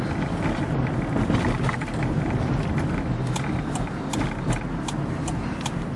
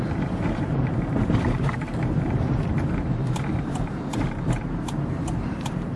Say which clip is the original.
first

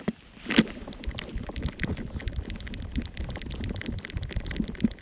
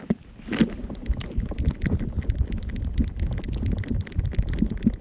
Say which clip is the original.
second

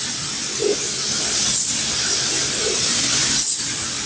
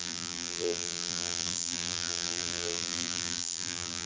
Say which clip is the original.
first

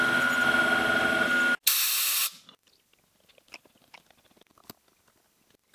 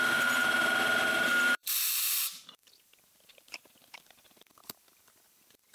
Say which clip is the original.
first